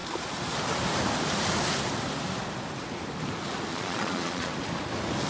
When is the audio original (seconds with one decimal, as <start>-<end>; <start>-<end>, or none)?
0.0-3.7; 4.5-5.3